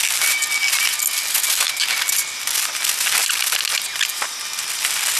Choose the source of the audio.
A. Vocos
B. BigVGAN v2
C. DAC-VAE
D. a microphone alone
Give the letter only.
D